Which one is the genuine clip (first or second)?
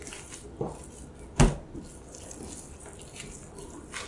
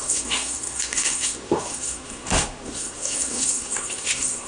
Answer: first